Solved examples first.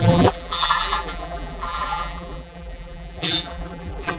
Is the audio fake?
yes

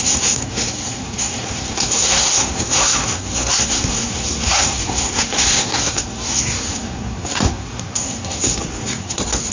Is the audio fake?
yes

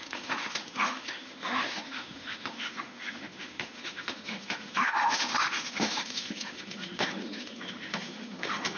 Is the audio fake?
yes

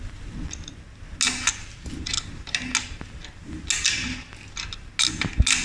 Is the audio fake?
no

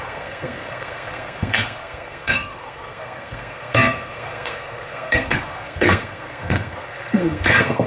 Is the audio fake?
yes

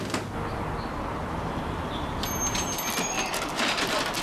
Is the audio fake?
no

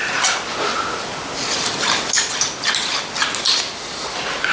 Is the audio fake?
no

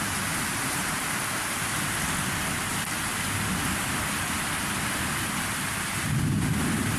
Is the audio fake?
yes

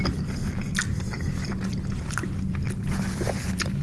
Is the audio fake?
no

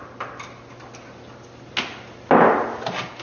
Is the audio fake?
no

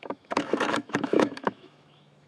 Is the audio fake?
yes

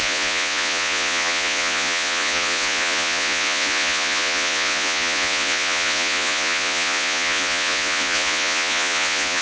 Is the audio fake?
yes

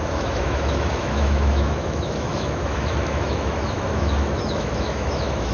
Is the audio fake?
yes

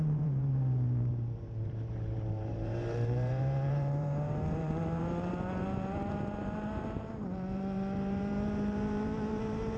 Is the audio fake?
yes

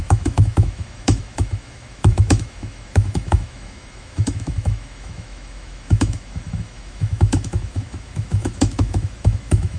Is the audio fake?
yes